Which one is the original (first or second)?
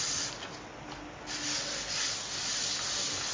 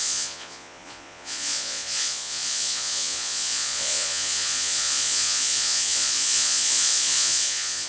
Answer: first